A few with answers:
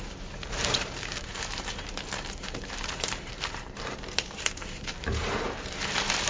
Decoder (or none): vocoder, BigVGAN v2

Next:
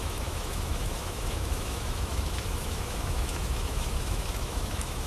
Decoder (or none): autoencoder, DAC-VAE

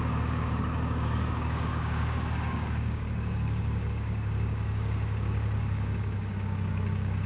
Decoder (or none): codec, DAC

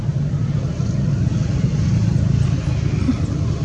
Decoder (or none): none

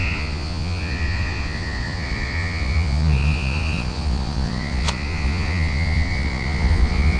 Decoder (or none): vocoder, Vocos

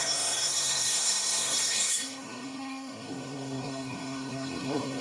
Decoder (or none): codec, SNAC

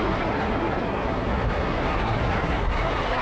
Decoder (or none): codec, SNAC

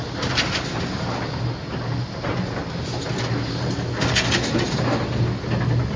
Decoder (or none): none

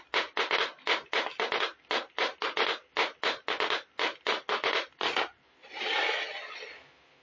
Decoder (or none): none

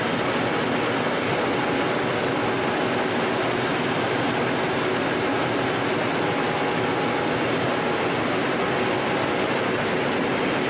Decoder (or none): none